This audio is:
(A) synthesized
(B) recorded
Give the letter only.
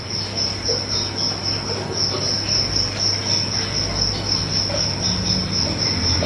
B